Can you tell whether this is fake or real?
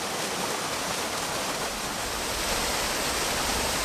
real